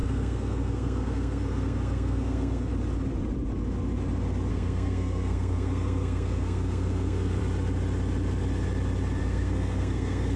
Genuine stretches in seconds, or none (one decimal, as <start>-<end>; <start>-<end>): 2.7-4.5; 7.4-9.2